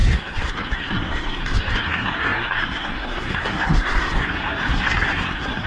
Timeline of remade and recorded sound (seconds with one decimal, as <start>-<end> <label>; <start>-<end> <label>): 0.0-5.7 remade